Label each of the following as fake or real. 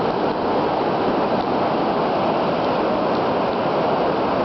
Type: real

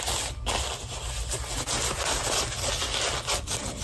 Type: real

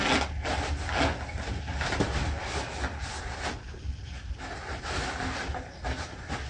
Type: real